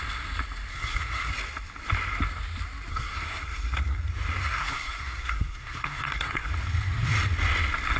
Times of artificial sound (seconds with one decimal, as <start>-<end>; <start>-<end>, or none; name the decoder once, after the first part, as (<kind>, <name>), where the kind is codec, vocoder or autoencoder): 0.7-1.3 (codec, SNAC); 2.9-4.0; 4.4-6.5